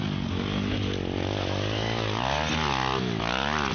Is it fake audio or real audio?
real